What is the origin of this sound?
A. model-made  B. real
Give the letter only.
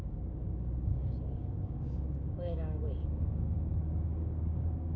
A